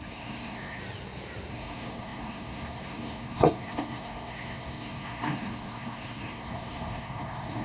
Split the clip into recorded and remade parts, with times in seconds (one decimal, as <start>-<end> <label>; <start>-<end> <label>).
0.0-0.8 remade; 0.8-1.5 recorded; 1.5-7.6 remade